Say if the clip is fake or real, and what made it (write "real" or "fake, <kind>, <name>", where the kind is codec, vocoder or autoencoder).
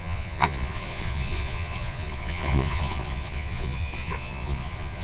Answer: fake, vocoder, Vocos